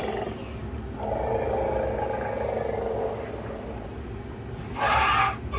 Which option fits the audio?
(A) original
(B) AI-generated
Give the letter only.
A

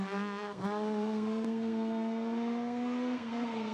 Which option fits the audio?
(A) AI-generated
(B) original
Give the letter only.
A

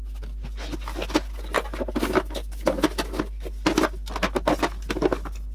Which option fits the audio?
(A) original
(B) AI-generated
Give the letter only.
A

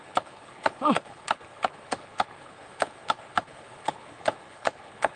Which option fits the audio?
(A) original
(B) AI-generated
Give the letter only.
B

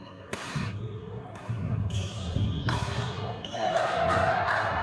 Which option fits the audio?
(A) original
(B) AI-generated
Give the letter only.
B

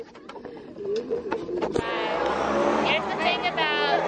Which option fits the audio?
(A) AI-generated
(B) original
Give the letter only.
B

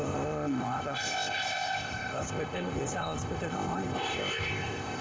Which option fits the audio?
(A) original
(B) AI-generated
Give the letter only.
B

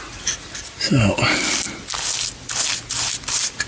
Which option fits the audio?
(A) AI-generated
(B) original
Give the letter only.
B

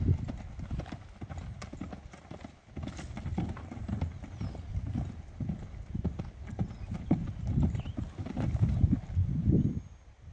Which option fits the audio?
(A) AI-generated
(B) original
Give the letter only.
B